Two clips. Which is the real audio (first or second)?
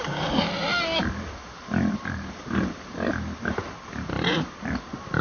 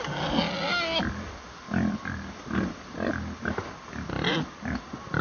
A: second